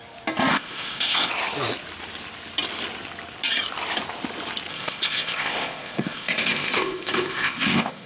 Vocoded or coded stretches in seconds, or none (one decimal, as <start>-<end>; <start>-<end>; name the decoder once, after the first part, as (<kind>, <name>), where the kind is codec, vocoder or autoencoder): 0.5-1.3 (codec, ZipCodec); 4.7-8.1